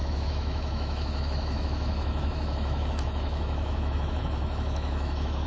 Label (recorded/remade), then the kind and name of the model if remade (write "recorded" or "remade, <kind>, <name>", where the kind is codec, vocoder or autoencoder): remade, autoencoder, DAC-VAE